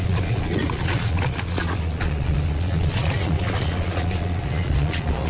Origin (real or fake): fake